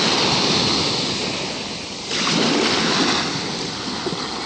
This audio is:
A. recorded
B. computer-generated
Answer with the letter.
A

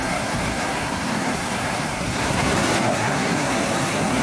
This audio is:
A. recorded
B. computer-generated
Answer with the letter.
B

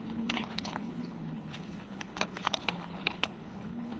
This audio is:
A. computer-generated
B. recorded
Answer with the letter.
A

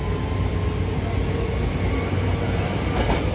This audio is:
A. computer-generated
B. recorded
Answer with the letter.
B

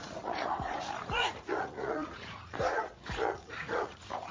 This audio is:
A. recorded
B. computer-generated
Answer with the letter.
B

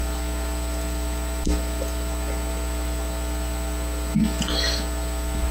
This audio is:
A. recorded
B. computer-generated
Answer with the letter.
A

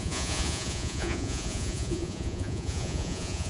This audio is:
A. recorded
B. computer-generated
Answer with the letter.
B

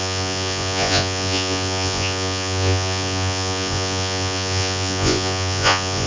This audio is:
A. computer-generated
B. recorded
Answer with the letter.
A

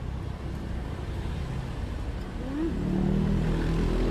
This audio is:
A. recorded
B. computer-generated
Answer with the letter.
A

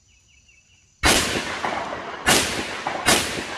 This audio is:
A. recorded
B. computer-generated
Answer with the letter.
A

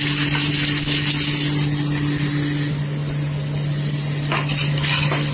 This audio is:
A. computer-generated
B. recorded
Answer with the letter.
B